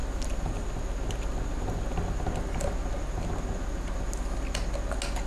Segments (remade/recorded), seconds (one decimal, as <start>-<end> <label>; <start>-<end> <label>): 0.0-5.3 recorded